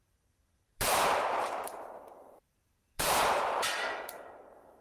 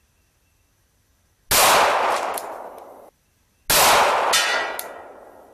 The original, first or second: second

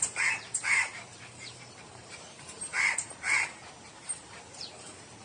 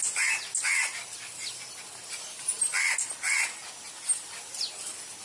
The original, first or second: second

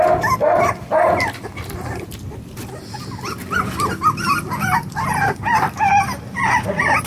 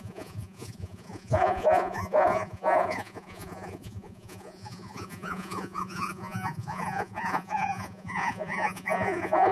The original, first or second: first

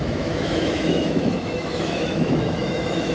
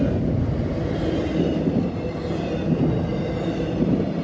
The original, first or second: second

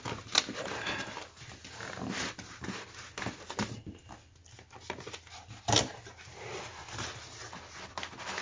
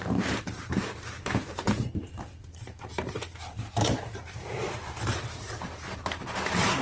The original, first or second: first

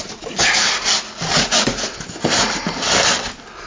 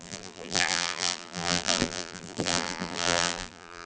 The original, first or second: first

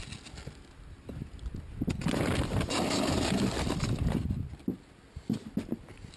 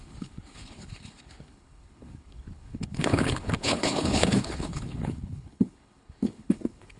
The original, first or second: first